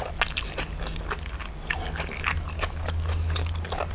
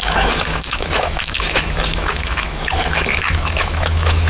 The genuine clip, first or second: first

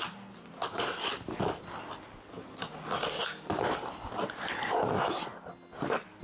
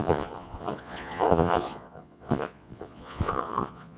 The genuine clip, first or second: first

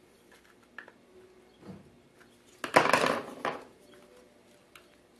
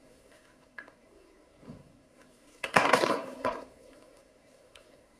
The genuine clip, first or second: first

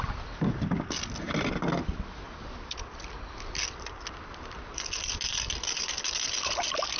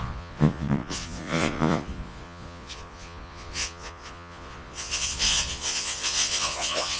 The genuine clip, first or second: first